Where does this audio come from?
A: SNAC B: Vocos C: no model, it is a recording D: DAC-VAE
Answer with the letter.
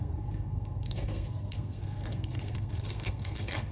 A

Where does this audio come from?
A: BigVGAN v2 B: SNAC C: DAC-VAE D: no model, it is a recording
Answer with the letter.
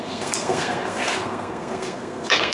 B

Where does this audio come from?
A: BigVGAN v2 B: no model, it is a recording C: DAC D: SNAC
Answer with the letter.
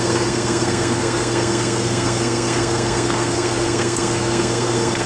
D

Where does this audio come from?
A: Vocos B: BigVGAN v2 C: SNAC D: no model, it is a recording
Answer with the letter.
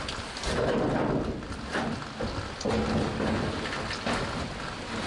D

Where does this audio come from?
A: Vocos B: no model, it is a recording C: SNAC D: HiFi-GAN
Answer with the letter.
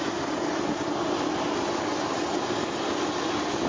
B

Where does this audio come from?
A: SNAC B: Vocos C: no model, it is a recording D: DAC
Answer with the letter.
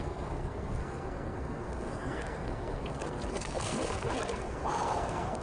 A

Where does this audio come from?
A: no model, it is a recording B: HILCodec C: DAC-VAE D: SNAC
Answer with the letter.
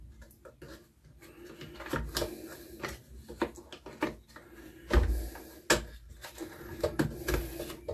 A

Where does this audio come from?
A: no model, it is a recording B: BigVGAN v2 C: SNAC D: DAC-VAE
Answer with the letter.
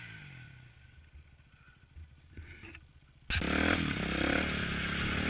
A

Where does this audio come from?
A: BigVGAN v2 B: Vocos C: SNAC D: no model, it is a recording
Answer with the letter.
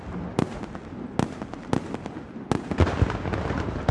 D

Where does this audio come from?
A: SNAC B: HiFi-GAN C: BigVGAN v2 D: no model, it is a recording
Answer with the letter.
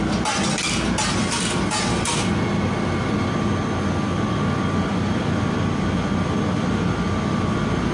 D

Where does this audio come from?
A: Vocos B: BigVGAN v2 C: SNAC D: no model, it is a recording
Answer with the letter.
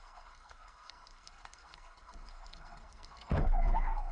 C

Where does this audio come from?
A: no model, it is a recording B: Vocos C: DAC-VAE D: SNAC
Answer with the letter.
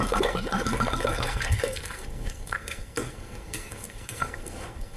D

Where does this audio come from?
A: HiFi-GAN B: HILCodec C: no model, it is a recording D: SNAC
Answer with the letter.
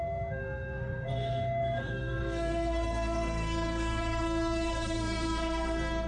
D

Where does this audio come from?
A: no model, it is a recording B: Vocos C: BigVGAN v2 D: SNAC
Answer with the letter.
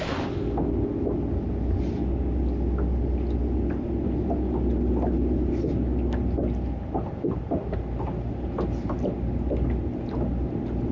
A